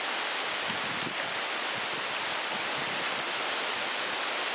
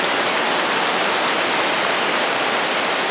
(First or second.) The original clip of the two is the first